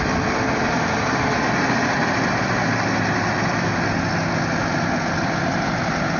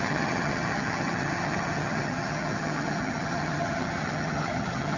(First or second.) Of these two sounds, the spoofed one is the second